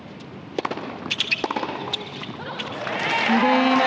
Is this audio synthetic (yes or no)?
no